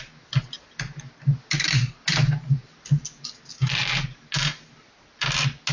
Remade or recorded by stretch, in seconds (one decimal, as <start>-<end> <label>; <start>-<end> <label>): 0.0-5.7 recorded